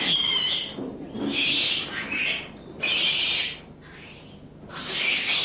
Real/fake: real